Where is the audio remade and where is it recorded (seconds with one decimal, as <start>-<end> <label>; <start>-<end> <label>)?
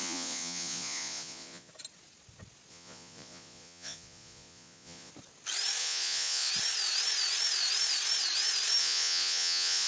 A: 0.0-1.7 remade; 1.7-2.7 recorded; 2.7-5.1 remade; 5.1-5.8 recorded; 5.8-6.5 remade; 6.5-8.8 recorded; 8.8-9.9 remade